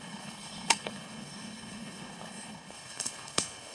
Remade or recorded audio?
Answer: remade